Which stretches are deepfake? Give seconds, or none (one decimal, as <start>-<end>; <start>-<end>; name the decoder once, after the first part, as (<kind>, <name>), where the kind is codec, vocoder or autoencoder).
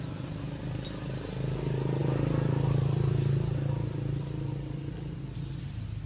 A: none